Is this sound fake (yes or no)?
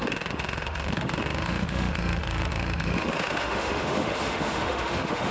yes